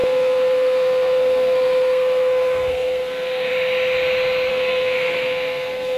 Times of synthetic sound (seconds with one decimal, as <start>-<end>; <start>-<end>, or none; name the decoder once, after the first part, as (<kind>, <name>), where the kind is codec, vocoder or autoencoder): 0.0-3.5 (codec, SNAC); 4.5-6.0